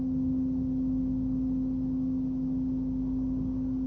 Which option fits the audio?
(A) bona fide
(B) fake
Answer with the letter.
A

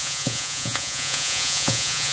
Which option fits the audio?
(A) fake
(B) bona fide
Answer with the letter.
A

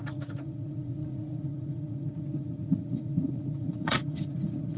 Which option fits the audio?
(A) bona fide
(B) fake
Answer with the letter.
B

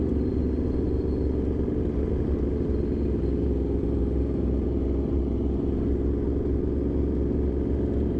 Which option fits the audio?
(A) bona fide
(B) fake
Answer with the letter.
A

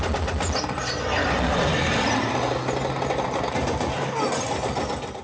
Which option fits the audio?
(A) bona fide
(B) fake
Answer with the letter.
A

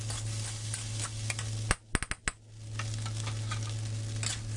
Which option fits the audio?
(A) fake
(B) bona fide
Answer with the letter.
B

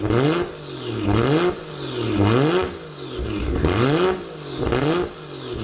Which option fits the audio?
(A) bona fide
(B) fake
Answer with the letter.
A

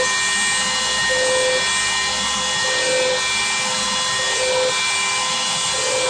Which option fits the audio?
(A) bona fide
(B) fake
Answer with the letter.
A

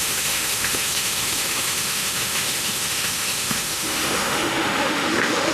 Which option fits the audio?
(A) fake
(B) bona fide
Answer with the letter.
A